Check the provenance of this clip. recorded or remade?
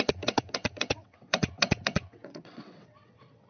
remade